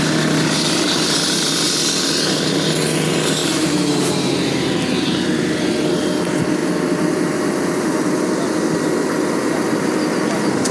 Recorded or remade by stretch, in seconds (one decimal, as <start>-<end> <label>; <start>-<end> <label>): 0.0-3.4 recorded; 3.4-4.5 remade; 4.5-10.7 recorded